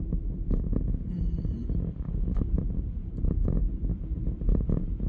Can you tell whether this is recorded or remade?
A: remade